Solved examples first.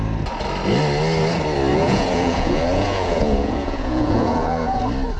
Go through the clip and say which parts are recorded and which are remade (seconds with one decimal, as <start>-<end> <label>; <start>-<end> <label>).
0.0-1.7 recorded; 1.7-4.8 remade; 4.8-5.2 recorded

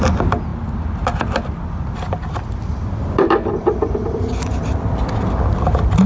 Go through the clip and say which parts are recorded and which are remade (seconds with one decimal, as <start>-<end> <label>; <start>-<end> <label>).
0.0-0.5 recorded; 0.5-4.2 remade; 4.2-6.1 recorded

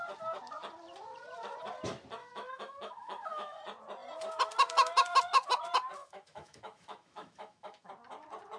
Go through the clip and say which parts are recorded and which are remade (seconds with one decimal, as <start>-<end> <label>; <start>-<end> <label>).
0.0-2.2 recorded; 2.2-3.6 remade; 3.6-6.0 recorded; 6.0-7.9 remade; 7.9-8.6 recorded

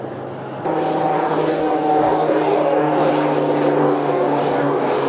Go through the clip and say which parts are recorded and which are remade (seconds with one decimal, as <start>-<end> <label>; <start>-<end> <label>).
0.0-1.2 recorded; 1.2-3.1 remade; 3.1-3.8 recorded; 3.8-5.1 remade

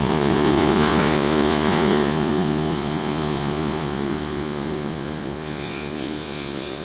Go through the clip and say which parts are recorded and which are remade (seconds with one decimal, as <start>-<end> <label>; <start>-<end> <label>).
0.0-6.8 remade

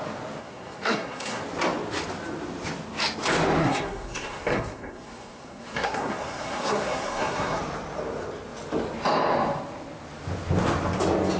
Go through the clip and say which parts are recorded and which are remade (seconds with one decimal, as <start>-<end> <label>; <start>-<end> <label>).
0.0-0.4 recorded; 0.4-1.4 remade; 1.4-3.6 recorded; 3.6-7.6 remade; 7.6-11.4 recorded